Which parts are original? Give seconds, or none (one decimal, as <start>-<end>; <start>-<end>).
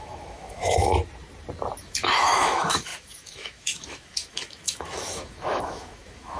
0.9-1.8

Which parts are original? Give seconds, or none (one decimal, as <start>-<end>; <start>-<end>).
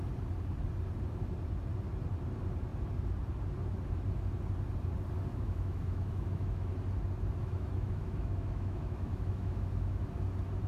0.0-5.3; 6.7-7.4; 10.0-10.7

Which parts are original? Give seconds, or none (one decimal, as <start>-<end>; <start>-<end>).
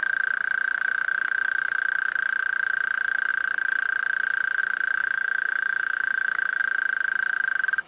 0.0-5.0; 6.6-7.9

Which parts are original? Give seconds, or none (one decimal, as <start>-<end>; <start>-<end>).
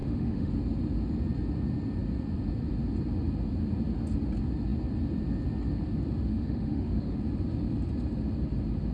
0.5-6.3; 7.2-8.9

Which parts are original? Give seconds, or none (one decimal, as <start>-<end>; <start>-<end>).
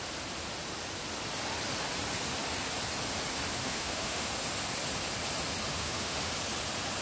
0.0-3.6; 4.3-5.7; 6.3-7.0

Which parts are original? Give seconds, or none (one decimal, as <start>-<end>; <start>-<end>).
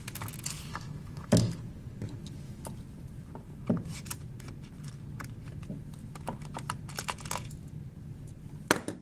0.0-0.7; 1.2-9.0